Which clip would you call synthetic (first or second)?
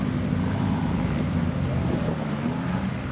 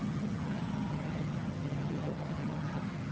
second